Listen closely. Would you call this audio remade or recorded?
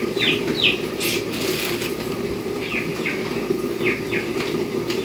recorded